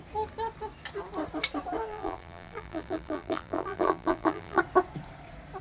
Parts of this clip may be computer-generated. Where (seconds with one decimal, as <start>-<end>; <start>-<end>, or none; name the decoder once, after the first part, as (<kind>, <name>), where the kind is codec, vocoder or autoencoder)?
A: 1.9-4.6 (vocoder, BigVGAN v2)